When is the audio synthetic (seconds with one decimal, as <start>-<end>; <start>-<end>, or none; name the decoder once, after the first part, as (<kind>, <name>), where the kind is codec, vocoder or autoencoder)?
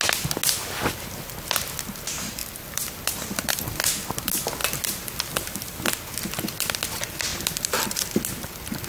2.4-3.8 (vocoder, BigVGAN v2); 4.6-5.2; 7.3-8.1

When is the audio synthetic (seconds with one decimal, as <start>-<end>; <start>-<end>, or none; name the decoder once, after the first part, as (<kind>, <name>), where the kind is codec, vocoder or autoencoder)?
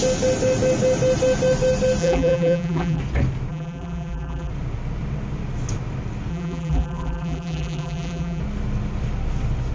2.0-3.0 (vocoder, BigVGAN v2); 3.5-4.5; 6.3-8.4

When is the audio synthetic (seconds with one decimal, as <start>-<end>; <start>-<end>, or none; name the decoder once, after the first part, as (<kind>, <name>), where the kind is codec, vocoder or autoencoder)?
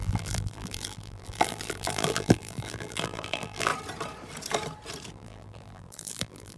0.0-3.7 (vocoder, BigVGAN v2); 5.1-6.6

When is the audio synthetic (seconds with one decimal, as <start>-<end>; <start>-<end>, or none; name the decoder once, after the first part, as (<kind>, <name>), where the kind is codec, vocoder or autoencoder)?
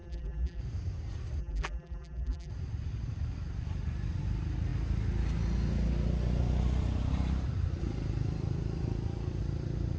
0.0-0.6 (vocoder, BigVGAN v2); 1.4-2.5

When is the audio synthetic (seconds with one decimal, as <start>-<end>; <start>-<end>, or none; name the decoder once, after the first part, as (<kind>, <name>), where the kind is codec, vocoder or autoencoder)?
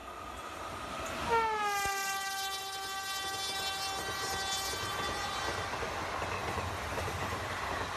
6.4-7.5 (vocoder, BigVGAN v2)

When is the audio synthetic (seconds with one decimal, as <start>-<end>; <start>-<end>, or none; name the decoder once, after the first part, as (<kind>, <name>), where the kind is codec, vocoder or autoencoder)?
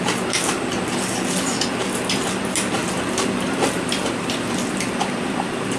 2.8-5.8 (vocoder, BigVGAN v2)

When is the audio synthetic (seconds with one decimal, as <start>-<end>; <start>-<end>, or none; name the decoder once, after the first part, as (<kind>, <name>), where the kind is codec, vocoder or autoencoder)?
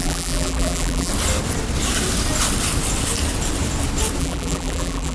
0.0-1.1 (vocoder, BigVGAN v2); 4.2-5.1